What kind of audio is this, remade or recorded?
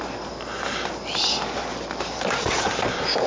recorded